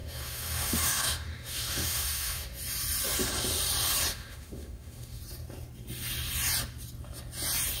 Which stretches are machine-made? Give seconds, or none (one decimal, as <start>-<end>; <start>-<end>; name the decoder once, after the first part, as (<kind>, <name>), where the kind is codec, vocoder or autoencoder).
0.0-2.5 (autoencoder, DAC-VAE); 4.1-5.2